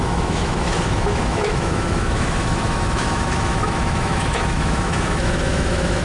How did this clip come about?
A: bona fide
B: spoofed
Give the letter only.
B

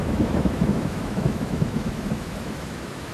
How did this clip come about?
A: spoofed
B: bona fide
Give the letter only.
A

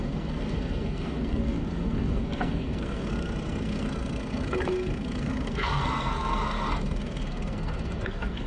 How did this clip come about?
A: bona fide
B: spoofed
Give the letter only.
B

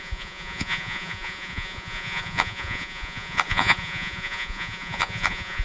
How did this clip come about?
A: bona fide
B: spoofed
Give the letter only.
B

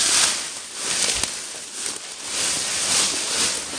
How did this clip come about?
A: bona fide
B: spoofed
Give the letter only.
A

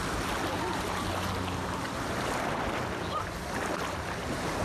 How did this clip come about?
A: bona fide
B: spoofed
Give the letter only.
A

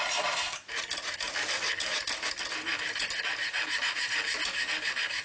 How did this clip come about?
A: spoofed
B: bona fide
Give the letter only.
B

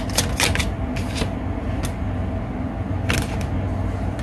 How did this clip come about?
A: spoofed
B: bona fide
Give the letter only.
B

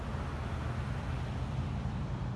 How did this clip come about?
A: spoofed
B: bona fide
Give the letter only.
B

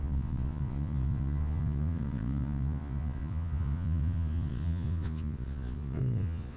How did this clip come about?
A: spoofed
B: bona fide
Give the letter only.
A